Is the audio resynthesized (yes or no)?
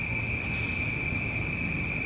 no